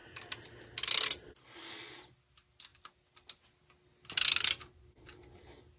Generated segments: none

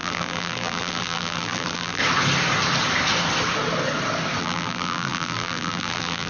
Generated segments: 0.0-2.0 (vocoder, BigVGAN v2); 4.4-6.3

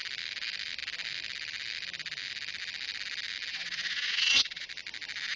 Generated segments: 3.5-4.7 (vocoder, WaveNeXt)